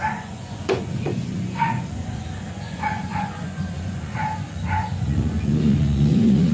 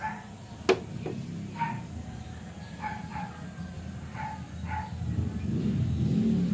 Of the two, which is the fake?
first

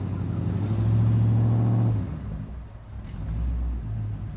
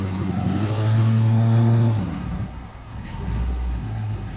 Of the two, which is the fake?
second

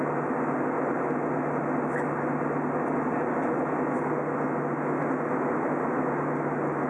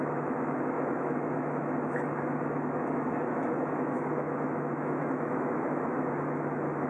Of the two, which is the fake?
second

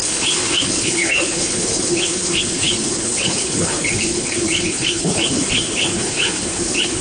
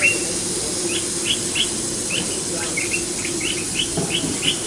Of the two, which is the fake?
first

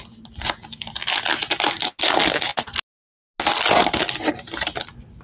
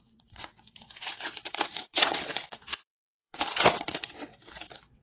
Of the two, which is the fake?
second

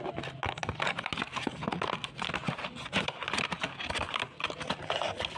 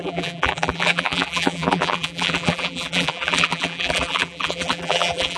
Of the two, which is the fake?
second